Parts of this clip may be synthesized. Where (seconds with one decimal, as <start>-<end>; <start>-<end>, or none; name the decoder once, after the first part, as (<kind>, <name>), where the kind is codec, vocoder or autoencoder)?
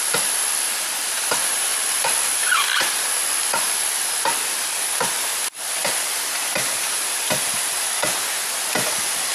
5.8-7.9 (vocoder, BigVGAN v2)